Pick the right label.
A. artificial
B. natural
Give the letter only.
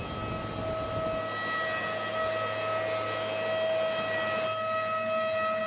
B